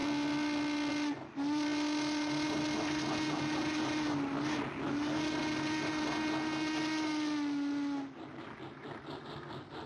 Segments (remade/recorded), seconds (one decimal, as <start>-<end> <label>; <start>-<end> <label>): 0.0-9.9 recorded